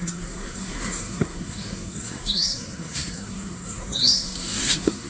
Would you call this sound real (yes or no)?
no